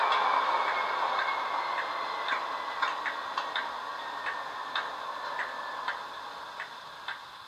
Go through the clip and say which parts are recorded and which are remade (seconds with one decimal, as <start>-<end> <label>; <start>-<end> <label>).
0.0-7.5 recorded